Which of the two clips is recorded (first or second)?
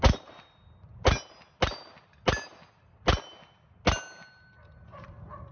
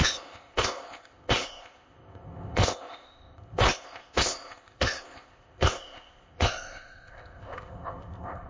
first